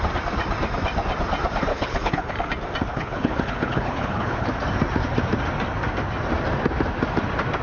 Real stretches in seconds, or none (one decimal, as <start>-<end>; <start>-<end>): 0.0-1.7; 2.3-2.9; 4.5-7.6